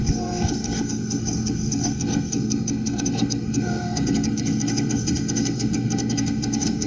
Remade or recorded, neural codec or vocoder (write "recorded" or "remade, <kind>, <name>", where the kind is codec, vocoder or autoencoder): remade, codec, SNAC